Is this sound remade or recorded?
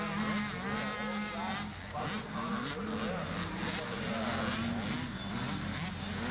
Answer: recorded